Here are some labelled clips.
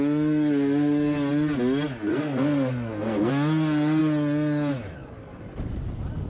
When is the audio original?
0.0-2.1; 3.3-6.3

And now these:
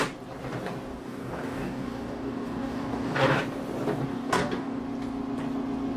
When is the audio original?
0.0-0.9; 3.4-4.1; 4.8-6.0